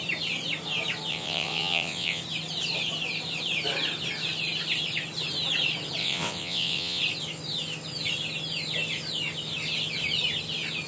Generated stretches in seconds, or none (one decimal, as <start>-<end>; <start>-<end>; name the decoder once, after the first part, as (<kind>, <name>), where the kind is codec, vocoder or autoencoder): 1.1-2.2 (vocoder, WaveNeXt); 6.0-7.0